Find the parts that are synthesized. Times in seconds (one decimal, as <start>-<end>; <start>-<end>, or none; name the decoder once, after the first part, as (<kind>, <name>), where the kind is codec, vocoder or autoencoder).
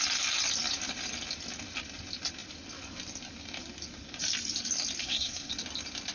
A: 5.0-5.5 (codec, SNAC)